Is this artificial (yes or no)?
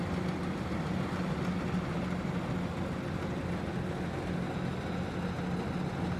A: no